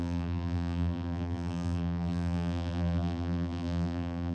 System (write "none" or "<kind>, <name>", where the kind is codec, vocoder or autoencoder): vocoder, BigVGAN v2